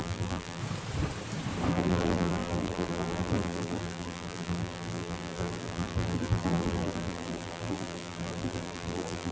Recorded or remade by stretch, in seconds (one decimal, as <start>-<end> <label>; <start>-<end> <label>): 0.0-0.6 remade; 0.6-1.7 recorded; 1.7-9.3 remade